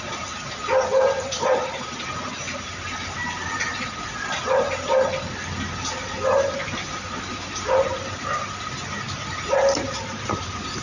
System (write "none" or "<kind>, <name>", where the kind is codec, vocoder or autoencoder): none